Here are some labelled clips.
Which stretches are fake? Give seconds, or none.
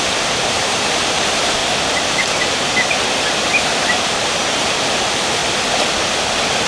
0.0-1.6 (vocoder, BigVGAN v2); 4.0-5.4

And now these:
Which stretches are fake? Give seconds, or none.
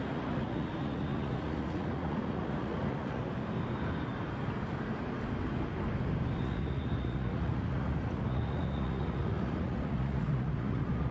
0.0-3.2 (vocoder, Vocos); 6.4-11.1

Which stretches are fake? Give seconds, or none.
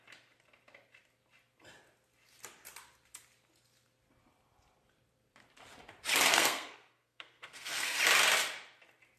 6.3-8.0 (codec, SNAC)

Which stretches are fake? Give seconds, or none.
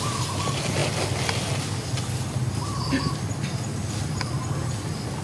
none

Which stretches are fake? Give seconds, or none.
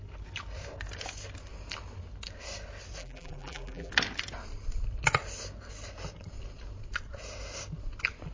3.0-3.9 (vocoder, BigVGAN v2)